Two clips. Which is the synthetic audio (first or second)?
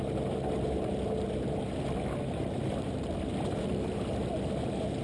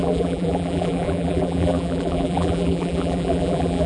second